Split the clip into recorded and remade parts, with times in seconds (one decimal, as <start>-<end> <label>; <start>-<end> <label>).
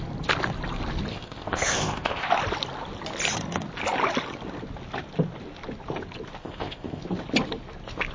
0.0-1.1 recorded; 1.1-2.3 remade; 2.3-6.4 recorded; 6.4-7.0 remade; 7.0-8.1 recorded